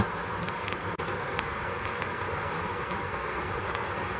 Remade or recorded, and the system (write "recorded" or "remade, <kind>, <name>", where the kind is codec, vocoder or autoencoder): remade, codec, SNAC